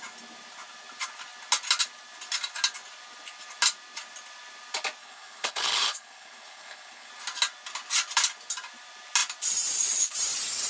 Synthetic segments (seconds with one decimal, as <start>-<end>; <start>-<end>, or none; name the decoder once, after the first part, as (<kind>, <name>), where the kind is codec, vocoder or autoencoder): 5.0-7.1 (codec, HILCodec)